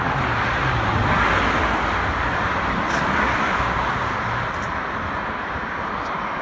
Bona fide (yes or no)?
yes